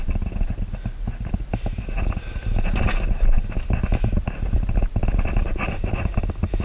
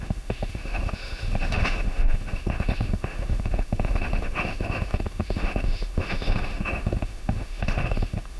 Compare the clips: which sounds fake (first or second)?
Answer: second